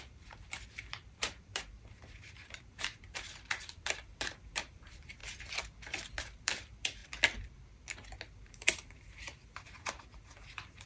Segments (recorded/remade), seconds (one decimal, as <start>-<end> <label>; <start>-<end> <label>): 0.0-5.2 remade; 5.2-6.2 recorded; 6.2-7.0 remade; 7.0-8.3 recorded; 8.3-10.9 remade